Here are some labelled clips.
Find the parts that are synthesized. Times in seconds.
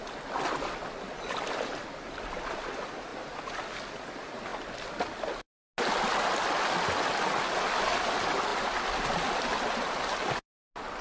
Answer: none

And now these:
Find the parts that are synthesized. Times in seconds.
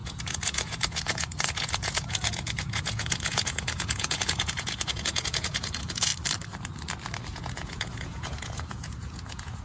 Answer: 0.0-6.1 (vocoder, Vocos); 7.3-9.6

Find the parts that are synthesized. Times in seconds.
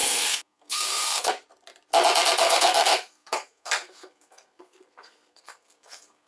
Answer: 0.0-1.3 (codec, SNAC); 2.4-6.3